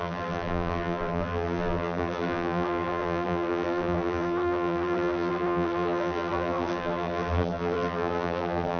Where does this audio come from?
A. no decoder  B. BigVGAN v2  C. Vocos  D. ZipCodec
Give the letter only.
B